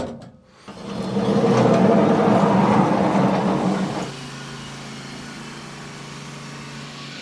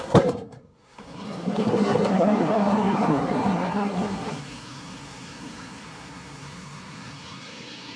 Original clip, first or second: first